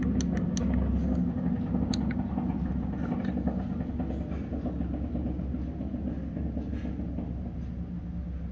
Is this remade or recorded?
recorded